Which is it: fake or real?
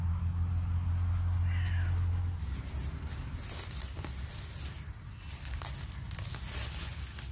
real